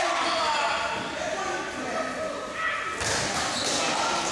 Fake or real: real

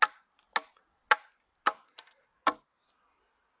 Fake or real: real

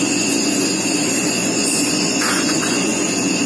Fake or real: fake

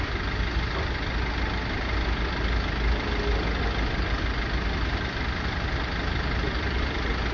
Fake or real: real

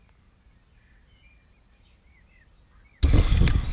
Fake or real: real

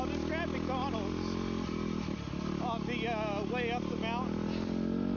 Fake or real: real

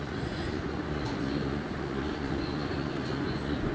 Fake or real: fake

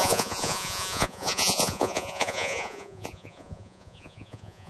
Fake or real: fake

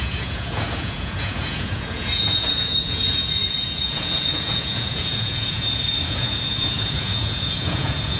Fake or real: fake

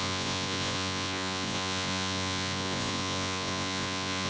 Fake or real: fake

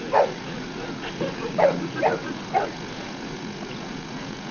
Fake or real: fake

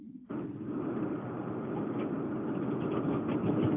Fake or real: real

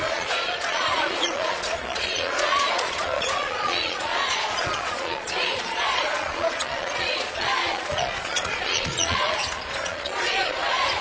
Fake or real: fake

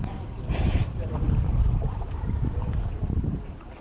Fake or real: real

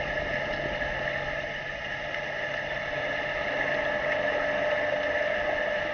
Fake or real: real